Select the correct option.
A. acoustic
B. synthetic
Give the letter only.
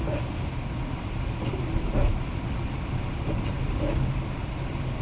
A